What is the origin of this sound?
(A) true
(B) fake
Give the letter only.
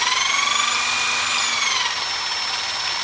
A